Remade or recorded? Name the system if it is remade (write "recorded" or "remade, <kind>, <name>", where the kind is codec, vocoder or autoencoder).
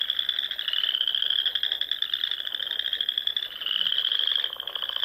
recorded